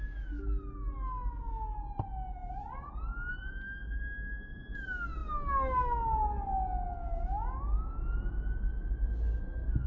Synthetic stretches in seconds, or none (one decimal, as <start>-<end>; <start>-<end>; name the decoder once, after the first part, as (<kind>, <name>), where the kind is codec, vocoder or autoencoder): none

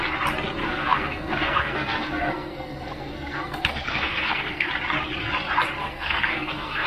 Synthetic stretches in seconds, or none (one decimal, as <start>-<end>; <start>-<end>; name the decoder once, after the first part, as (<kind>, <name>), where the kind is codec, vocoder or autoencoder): 0.6-4.7 (codec, SNAC); 5.8-6.9

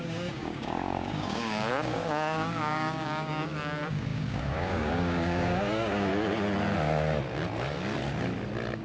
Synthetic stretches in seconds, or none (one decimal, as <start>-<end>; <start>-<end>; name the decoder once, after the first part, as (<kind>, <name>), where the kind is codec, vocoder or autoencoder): 0.0-6.1 (codec, DAC)

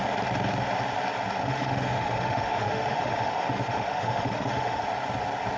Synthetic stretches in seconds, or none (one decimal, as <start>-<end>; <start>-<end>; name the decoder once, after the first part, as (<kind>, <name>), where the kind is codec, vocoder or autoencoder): 1.4-4.8 (autoencoder, DAC-VAE)

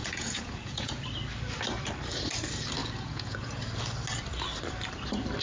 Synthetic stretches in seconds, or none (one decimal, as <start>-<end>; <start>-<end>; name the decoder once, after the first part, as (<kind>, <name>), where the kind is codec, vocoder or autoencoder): 0.0-0.9 (vocoder, Vocos); 2.8-3.6